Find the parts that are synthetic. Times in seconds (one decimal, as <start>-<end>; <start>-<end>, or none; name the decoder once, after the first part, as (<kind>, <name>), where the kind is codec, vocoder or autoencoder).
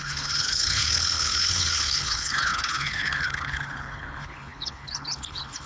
0.0-5.7 (codec, HILCodec)